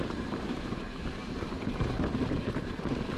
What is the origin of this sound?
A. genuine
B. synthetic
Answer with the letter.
B